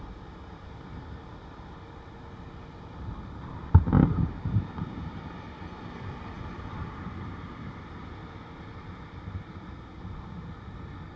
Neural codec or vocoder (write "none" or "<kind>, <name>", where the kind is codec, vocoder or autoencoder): none